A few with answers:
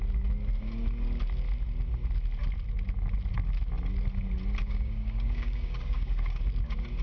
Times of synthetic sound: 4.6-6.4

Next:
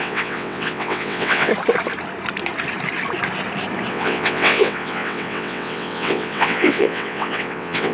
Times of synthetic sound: 0.0-1.5; 3.9-7.9